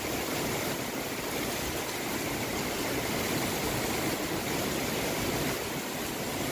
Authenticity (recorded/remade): recorded